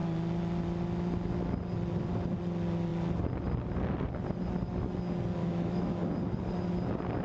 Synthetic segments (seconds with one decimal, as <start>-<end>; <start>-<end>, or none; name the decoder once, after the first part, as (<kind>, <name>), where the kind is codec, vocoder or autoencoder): 5.4-6.0 (autoencoder, DAC-VAE)